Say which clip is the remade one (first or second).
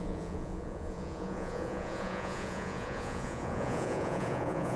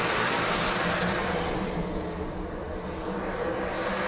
first